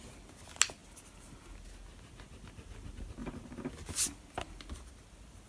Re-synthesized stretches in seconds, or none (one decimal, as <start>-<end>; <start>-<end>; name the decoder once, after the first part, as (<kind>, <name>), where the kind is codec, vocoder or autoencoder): none